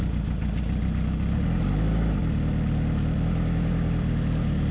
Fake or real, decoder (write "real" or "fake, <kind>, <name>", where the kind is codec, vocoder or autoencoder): real